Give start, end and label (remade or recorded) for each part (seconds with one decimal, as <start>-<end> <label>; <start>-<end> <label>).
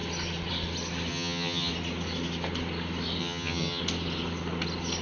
0.0-1.1 recorded; 1.1-1.7 remade; 1.7-3.2 recorded; 3.2-3.8 remade; 3.8-5.0 recorded